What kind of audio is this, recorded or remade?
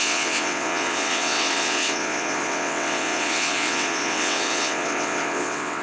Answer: remade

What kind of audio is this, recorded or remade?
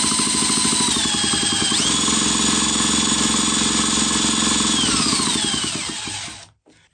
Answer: recorded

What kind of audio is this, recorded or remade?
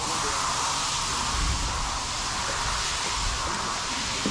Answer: recorded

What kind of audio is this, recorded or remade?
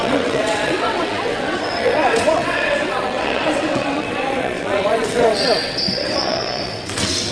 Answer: remade